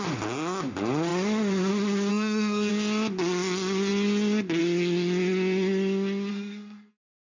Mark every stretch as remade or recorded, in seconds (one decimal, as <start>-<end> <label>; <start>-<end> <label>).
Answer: 0.0-2.1 recorded; 2.1-2.7 remade; 2.7-6.3 recorded; 6.3-6.9 remade; 6.9-7.4 recorded